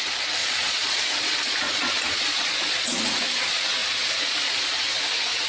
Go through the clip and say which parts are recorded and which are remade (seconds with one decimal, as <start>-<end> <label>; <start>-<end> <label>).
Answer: 0.0-0.4 recorded; 0.4-3.0 remade; 3.0-3.8 recorded; 3.8-4.4 remade; 4.4-5.5 recorded